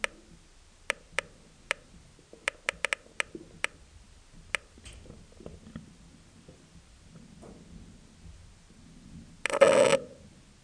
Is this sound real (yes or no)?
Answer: yes